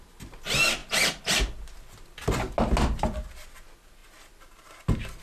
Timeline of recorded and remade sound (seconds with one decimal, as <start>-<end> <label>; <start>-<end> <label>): 0.0-5.2 recorded